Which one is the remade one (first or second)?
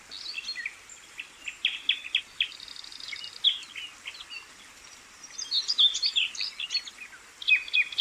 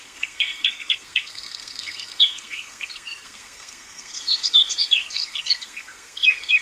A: second